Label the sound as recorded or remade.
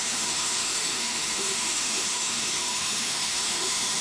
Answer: remade